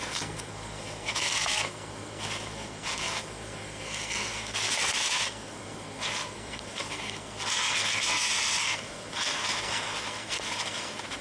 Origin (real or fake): fake